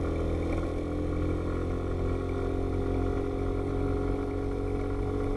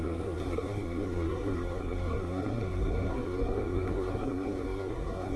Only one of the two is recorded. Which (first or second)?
first